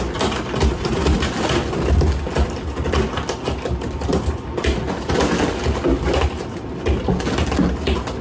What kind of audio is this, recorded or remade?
recorded